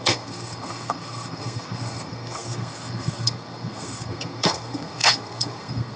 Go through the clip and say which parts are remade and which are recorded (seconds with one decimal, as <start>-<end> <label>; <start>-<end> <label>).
0.0-6.0 remade